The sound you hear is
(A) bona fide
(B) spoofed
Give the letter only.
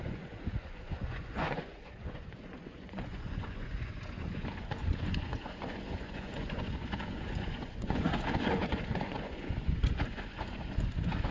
B